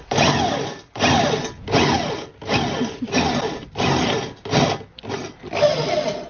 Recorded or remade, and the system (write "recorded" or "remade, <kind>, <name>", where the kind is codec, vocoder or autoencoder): recorded